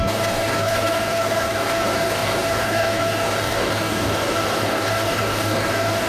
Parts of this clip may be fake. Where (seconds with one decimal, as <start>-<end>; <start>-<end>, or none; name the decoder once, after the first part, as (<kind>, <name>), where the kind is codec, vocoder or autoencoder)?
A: 0.0-6.1 (codec, DAC)